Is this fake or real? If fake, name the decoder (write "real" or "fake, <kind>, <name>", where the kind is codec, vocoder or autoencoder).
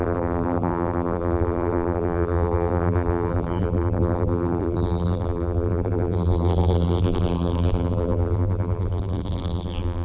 fake, vocoder, BigVGAN v2